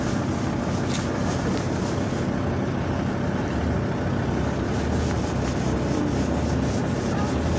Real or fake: real